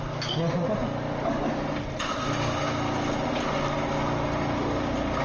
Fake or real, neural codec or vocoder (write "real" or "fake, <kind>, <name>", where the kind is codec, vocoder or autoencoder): real